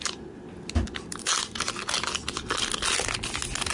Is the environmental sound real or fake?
real